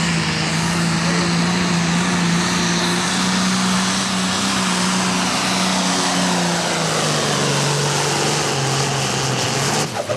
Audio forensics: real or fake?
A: real